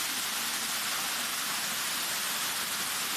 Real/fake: real